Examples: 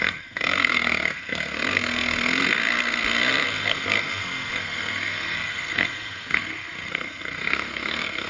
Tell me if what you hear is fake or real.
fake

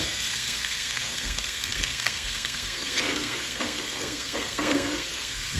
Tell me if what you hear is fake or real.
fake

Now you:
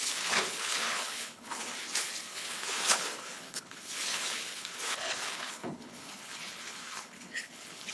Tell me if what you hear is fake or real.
fake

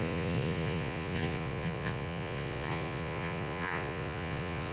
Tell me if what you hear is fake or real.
fake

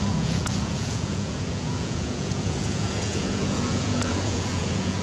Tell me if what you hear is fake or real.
fake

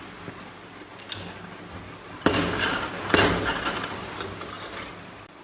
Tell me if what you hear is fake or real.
real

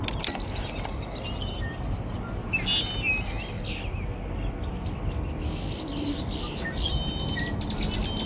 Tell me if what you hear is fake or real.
real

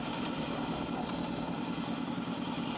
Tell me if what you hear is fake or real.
real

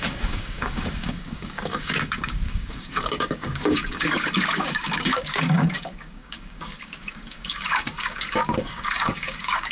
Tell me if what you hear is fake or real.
fake